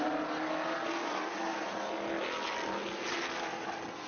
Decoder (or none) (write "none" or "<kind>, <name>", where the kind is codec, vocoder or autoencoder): none